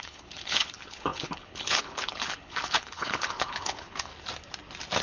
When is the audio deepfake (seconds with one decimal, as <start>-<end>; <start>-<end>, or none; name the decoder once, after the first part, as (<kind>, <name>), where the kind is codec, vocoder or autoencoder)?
0.0-4.1 (codec, HILCodec)

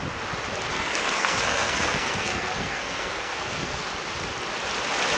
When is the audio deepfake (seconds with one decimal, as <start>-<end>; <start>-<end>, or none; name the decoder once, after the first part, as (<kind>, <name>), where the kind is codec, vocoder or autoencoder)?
0.7-3.8 (codec, SNAC)